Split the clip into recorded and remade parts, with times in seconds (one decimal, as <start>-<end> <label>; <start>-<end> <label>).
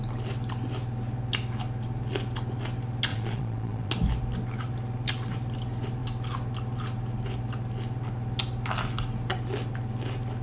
0.0-3.1 recorded; 3.1-3.9 remade; 3.9-10.4 recorded